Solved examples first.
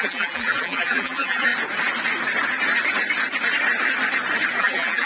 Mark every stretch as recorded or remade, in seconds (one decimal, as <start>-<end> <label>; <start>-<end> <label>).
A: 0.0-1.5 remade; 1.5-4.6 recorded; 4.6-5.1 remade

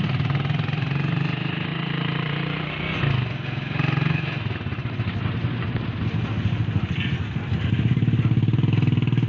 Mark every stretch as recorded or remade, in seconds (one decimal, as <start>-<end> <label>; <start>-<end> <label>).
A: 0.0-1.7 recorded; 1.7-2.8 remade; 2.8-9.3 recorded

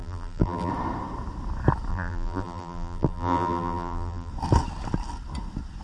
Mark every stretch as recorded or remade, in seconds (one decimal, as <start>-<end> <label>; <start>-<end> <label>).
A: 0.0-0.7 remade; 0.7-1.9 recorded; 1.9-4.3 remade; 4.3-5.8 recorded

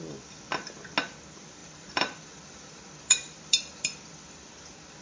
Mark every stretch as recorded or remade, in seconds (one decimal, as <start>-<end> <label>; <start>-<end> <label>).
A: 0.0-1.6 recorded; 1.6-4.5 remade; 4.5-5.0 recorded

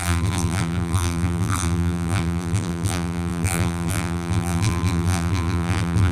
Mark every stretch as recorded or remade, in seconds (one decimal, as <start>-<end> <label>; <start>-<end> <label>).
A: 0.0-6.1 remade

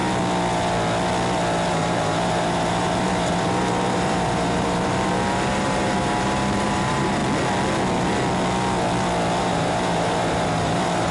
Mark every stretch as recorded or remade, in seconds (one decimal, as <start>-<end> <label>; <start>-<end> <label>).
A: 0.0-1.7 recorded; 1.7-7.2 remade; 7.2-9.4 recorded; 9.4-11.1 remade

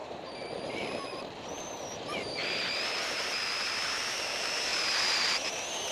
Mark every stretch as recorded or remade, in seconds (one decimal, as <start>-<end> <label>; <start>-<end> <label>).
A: 0.0-4.7 remade; 4.7-5.9 recorded

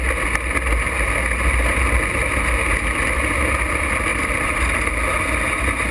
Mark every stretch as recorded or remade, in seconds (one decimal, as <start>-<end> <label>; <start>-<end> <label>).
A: 0.0-4.1 recorded; 4.1-5.0 remade; 5.0-5.9 recorded